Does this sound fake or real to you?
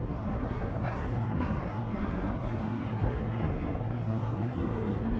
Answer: fake